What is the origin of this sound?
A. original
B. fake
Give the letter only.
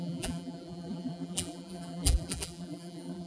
B